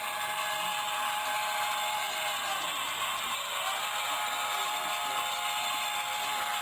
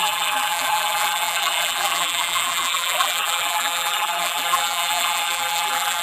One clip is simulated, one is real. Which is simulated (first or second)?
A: second